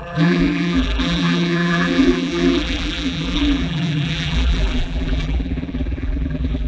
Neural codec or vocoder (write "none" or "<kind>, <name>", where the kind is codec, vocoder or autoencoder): vocoder, BigVGAN v2